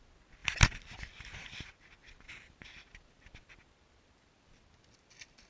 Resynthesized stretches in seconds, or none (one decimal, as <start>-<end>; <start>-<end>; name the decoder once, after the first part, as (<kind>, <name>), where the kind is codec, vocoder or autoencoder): none